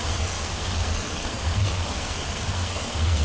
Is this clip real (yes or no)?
no